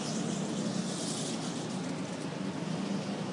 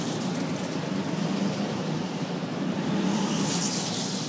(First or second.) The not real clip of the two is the second